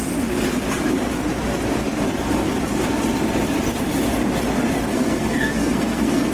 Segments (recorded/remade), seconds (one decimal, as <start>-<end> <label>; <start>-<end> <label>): 0.0-4.9 recorded; 4.9-6.3 remade